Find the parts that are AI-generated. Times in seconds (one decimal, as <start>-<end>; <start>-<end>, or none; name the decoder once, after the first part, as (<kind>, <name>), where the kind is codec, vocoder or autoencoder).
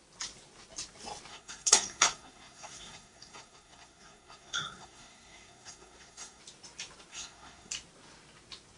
1.3-6.4 (codec, SNAC); 7.1-7.7